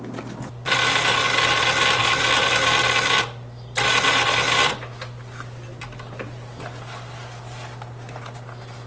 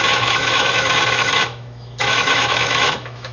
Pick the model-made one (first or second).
second